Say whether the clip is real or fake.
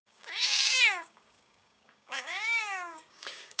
fake